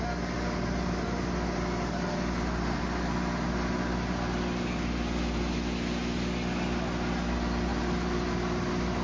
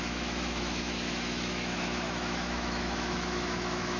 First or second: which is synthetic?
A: second